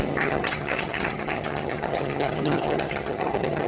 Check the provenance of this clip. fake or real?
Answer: fake